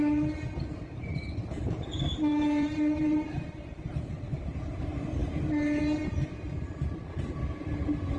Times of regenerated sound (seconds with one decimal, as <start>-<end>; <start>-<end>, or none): 2.3-4.8; 5.2-5.8